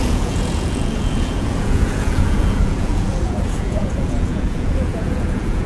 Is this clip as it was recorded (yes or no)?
no